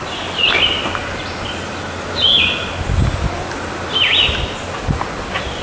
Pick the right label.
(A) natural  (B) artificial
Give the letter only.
A